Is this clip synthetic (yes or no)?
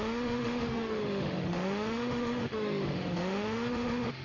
yes